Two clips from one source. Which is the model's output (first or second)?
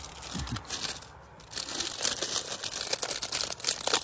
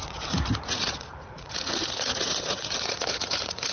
second